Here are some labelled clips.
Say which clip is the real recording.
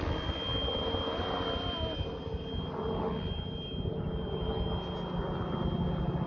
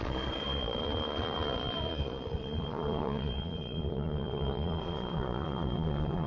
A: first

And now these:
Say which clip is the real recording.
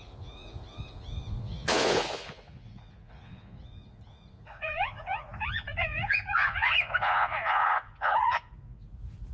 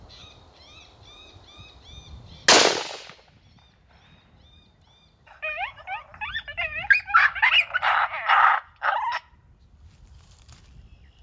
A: second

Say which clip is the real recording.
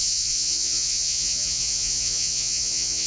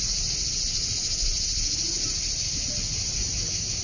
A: second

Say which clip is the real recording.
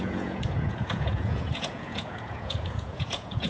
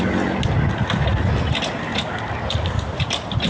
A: second